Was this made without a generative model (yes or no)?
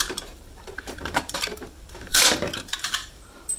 no